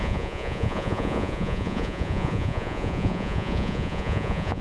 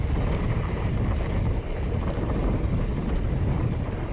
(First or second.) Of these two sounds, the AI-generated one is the first